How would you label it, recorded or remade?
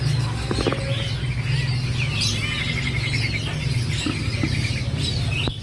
recorded